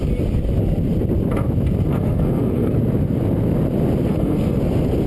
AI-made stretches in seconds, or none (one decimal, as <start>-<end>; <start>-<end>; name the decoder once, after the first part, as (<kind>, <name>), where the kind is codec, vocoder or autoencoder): 1.9-2.8 (codec, SNAC); 4.1-4.6